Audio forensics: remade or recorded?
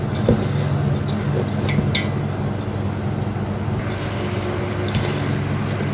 recorded